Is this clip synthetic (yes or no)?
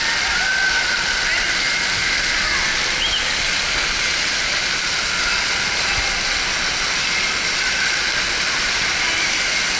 no